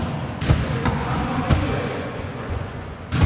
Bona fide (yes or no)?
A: no